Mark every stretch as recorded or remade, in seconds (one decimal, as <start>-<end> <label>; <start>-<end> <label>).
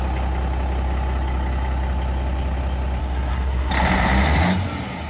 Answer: 0.0-3.0 recorded; 3.0-3.7 remade; 3.7-5.1 recorded